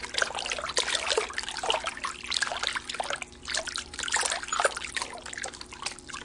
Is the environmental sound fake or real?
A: real